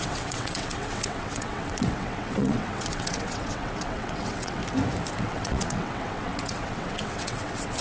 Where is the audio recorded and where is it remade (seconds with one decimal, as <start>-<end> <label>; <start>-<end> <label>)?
0.0-4.6 remade; 4.6-5.2 recorded; 5.2-7.8 remade